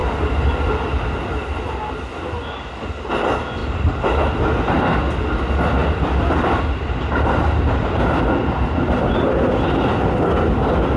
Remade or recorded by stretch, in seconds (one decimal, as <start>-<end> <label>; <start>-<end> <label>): 0.0-0.6 remade; 0.6-3.6 recorded; 3.6-4.3 remade; 4.3-5.8 recorded; 5.8-8.3 remade; 8.3-11.0 recorded